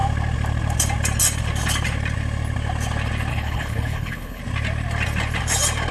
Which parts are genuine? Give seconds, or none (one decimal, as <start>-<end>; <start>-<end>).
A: 0.0-3.3; 4.4-5.9